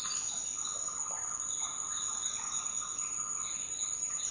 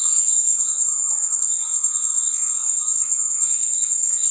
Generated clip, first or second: second